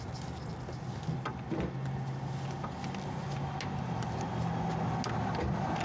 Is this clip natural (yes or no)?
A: yes